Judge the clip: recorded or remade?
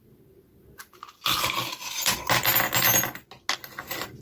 recorded